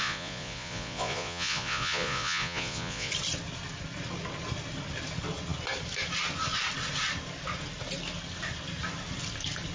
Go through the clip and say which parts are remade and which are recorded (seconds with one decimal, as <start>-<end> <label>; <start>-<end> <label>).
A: 0.0-3.1 remade; 3.1-9.7 recorded